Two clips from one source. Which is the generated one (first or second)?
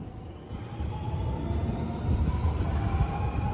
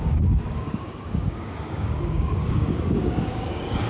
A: second